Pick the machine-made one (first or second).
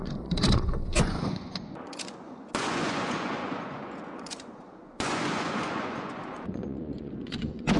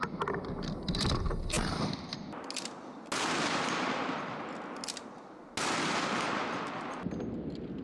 first